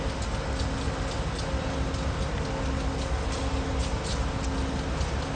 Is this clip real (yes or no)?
yes